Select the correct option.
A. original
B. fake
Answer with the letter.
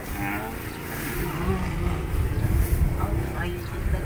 A